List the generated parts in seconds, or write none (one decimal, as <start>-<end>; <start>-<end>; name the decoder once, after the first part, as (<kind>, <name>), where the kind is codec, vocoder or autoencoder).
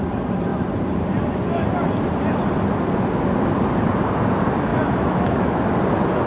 4.7-5.6 (autoencoder, DAC-VAE)